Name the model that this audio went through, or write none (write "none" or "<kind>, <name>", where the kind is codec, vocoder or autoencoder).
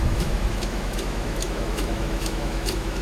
autoencoder, DAC-VAE